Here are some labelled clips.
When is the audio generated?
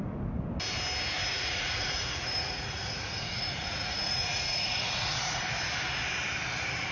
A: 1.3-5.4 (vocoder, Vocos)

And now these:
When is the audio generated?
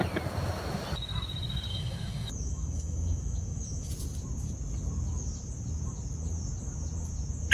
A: 1.7-3.9 (autoencoder, DAC-VAE)